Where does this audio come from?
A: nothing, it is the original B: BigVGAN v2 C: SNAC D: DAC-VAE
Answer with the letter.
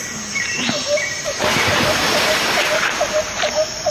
B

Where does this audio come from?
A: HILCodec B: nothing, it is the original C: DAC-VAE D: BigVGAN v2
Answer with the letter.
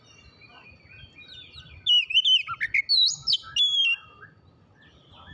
B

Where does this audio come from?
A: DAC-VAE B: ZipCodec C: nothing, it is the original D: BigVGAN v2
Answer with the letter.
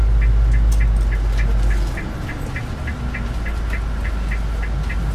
C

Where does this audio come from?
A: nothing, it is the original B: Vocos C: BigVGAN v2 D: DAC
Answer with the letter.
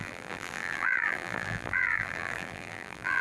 C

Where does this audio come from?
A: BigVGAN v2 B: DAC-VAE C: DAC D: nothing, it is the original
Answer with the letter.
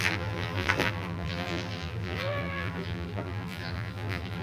A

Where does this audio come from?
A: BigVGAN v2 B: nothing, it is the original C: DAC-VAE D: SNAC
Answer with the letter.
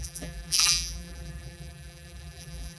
A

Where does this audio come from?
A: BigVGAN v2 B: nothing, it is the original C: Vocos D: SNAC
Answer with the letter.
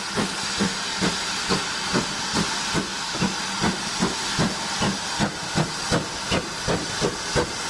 B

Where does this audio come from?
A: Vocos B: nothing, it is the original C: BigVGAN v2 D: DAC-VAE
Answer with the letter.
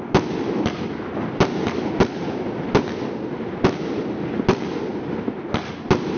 B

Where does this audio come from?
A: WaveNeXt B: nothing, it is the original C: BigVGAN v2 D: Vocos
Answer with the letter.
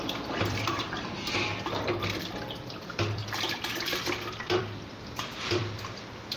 C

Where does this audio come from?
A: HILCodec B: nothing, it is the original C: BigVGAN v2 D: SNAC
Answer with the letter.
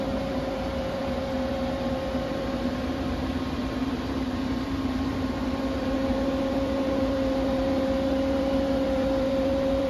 C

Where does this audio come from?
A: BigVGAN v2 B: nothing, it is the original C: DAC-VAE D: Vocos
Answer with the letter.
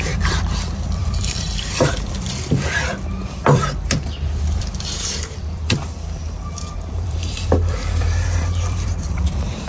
A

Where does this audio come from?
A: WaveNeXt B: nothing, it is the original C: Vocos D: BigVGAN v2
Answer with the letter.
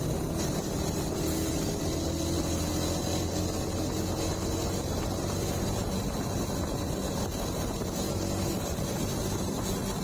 B